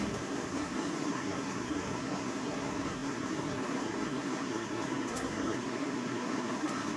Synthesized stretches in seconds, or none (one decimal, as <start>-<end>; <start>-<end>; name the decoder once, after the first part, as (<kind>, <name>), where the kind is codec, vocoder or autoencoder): 0.0-7.0 (codec, SNAC)